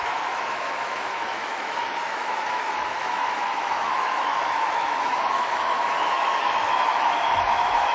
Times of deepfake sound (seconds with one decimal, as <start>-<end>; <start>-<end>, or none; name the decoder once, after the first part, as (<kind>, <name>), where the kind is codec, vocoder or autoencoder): 0.0-7.9 (autoencoder, DAC-VAE)